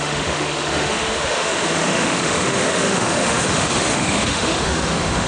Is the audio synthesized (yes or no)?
yes